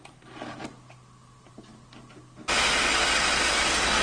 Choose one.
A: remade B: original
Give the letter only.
B